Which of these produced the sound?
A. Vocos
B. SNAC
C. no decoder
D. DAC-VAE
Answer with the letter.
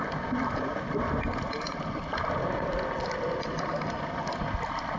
C